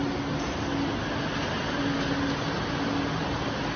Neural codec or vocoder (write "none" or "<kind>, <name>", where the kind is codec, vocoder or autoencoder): none